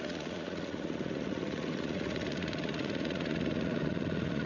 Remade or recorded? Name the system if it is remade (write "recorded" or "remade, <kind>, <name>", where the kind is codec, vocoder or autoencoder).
remade, vocoder, Vocos